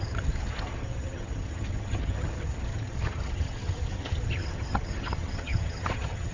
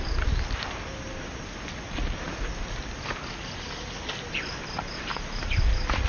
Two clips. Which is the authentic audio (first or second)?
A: second